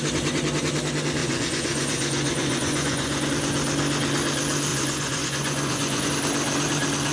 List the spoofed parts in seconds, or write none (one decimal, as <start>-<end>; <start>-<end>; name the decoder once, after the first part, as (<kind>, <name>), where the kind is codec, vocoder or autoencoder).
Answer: 1.2-3.3 (vocoder, Vocos); 4.7-6.1